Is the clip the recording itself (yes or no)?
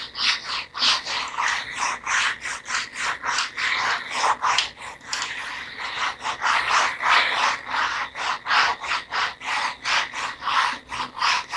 yes